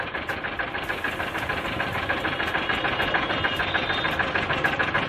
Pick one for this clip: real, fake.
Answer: real